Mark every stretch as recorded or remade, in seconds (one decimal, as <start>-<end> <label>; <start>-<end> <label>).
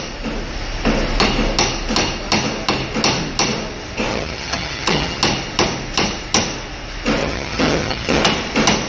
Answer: 0.0-4.1 recorded; 4.1-5.2 remade; 5.2-7.2 recorded; 7.2-8.2 remade; 8.2-8.9 recorded